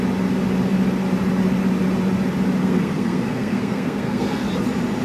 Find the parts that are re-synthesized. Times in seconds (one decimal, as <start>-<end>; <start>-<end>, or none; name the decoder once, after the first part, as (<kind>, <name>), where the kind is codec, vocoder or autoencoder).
2.6-4.5 (codec, SNAC)